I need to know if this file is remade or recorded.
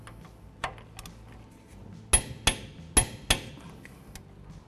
recorded